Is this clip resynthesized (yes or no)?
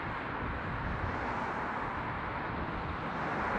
no